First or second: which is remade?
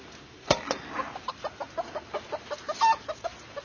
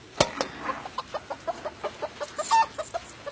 first